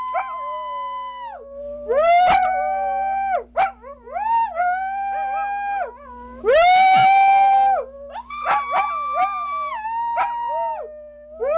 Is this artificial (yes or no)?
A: no